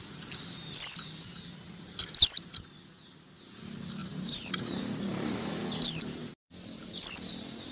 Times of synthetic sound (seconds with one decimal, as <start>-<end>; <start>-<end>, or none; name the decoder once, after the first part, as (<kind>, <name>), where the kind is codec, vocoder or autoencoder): 4.0-5.5 (vocoder, BigVGAN v2)